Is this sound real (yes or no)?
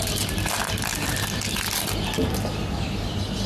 yes